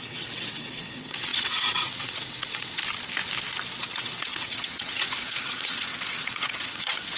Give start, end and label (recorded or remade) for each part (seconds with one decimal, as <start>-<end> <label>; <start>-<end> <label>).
0.0-2.8 remade; 2.8-3.8 recorded; 3.8-7.2 remade